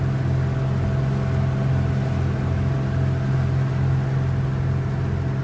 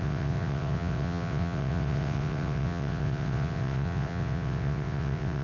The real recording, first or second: first